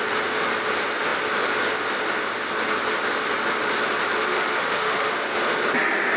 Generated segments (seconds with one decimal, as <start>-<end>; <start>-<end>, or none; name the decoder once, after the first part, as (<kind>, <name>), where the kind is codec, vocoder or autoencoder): 4.3-5.1 (autoencoder, DAC-VAE)

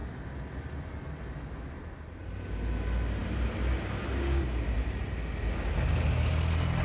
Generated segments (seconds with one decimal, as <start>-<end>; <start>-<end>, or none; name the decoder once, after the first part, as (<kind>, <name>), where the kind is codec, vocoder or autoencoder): none

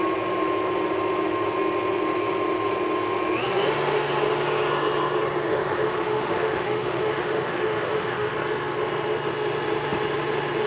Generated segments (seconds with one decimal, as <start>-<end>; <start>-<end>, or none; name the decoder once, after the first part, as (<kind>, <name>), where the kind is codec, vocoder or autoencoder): 5.5-8.3 (autoencoder, DAC-VAE)

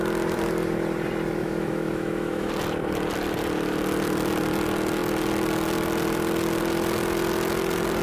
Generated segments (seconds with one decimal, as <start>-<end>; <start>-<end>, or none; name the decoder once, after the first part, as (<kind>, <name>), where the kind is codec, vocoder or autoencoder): 1.4-2.5 (autoencoder, DAC-VAE)

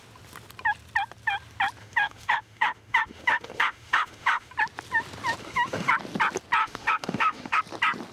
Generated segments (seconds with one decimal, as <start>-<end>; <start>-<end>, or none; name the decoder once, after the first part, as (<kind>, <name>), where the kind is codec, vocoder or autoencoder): 1.8-4.5 (autoencoder, DAC-VAE); 5.4-5.9; 6.6-7.6